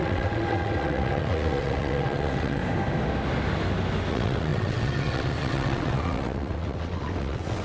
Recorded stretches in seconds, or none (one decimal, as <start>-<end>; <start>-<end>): 2.6-4.1